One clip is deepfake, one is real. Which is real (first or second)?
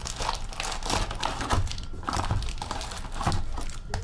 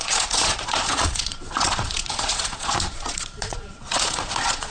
first